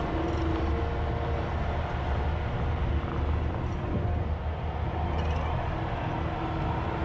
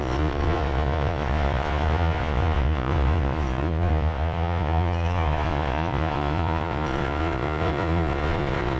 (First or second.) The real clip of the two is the first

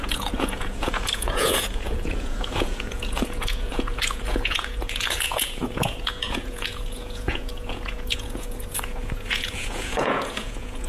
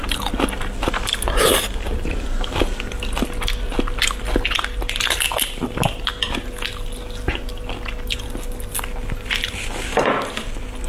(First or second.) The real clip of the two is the second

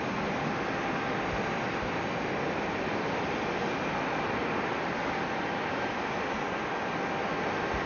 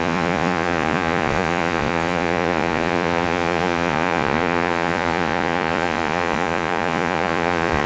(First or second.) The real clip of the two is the first